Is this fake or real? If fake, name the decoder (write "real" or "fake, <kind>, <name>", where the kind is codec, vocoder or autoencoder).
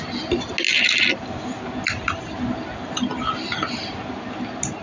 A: real